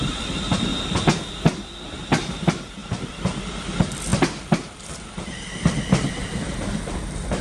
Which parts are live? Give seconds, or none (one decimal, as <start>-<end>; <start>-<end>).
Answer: 0.7-1.3

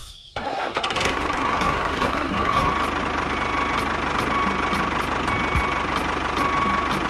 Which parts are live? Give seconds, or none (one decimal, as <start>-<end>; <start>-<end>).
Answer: 2.7-7.1

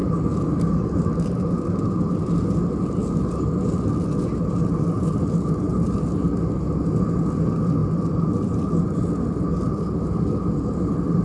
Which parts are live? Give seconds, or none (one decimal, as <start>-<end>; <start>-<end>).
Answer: 0.0-11.2

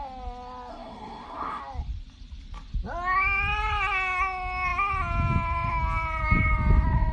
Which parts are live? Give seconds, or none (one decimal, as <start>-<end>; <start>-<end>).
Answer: 0.0-0.7; 1.6-7.1

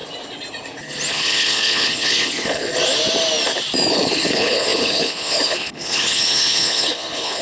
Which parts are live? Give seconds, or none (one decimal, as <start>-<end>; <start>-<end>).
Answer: 0.0-1.1; 2.7-3.9

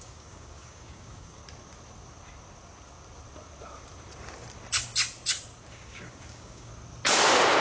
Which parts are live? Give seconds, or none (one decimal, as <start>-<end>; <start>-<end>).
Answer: 1.4-5.7; 6.7-7.6

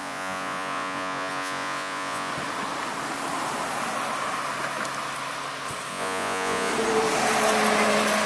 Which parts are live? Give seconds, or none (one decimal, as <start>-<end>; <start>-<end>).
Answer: 2.3-5.9; 6.7-8.3

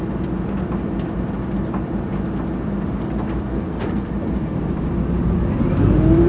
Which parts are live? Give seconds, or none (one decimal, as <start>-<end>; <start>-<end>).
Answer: 0.0-3.5; 4.1-6.3